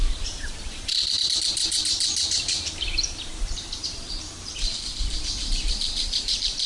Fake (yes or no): yes